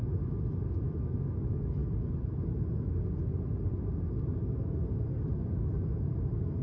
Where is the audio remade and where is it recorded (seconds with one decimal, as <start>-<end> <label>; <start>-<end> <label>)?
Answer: 0.0-1.8 remade; 1.8-5.8 recorded; 5.8-6.6 remade